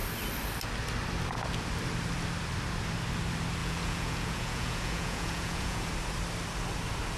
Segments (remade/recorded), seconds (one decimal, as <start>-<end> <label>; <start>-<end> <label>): 0.0-3.6 recorded; 3.6-5.9 remade; 5.9-7.2 recorded